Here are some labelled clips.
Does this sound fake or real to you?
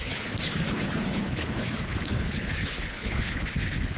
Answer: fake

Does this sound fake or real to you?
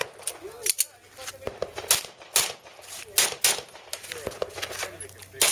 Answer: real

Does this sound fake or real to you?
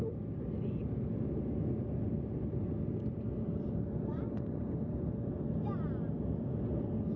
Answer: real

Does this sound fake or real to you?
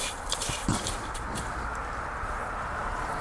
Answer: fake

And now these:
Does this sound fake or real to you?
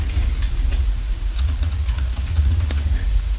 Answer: fake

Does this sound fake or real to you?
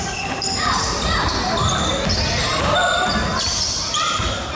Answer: fake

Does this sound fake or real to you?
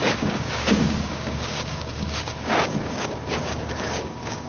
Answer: fake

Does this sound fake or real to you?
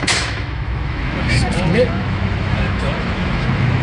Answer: fake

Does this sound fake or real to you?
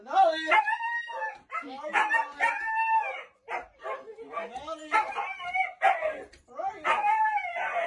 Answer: real